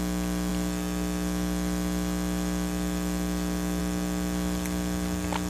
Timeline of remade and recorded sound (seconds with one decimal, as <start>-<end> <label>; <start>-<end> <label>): 0.0-5.5 recorded